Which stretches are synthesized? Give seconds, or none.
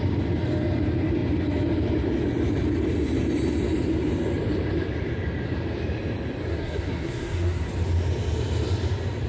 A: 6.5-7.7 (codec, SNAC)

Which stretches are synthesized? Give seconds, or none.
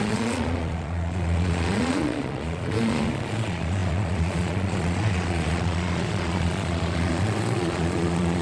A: 0.0-8.4 (vocoder, Vocos)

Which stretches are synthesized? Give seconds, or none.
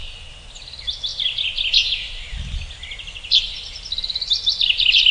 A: 1.1-3.9 (vocoder, BigVGAN v2)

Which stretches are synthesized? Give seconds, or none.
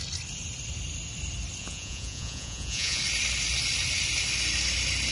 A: 1.6-3.0 (vocoder, Vocos)